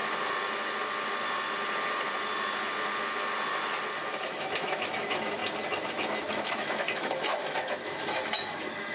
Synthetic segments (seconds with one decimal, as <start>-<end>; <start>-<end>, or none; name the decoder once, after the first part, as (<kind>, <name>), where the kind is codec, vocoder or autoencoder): 4.0-5.4 (autoencoder, DAC-VAE); 5.9-8.9